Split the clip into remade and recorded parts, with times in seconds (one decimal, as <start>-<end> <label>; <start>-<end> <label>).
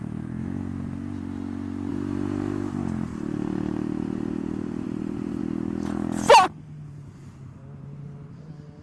0.0-1.9 recorded; 1.9-5.4 remade; 5.4-8.8 recorded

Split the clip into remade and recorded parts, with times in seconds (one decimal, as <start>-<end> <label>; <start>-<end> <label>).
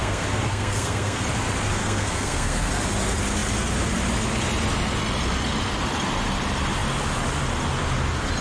0.0-1.2 remade; 1.2-1.8 recorded; 1.8-2.7 remade; 2.7-8.4 recorded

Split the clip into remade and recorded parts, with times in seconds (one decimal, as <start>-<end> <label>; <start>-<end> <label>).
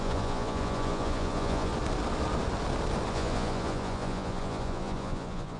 0.0-1.7 remade; 1.7-3.1 recorded; 3.1-5.6 remade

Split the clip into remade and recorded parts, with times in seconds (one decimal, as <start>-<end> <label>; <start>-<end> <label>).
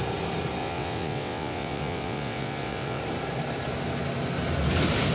0.0-0.6 recorded; 0.6-3.0 remade; 3.0-5.1 recorded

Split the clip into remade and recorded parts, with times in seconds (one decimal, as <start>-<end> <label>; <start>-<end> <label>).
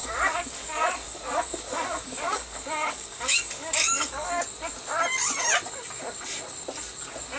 0.0-4.4 remade; 4.4-7.4 recorded